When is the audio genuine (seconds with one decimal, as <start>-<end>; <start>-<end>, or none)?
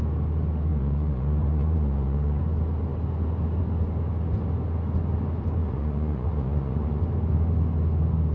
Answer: 0.0-0.7; 2.4-5.6; 7.0-8.3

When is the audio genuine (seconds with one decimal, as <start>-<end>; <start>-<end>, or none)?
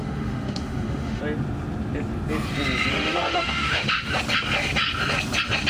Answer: 1.2-2.9; 4.1-5.7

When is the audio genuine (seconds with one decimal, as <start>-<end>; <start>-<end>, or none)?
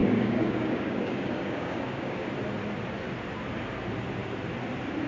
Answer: 2.2-5.1